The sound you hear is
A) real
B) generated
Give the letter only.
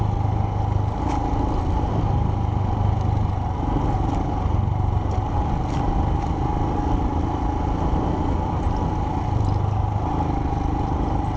A